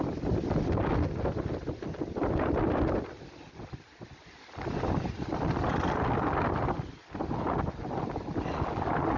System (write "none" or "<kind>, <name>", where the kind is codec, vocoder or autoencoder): none